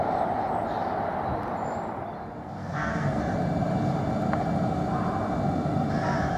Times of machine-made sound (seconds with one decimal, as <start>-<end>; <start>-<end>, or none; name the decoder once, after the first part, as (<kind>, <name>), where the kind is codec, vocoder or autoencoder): 2.4-3.2 (codec, SNAC)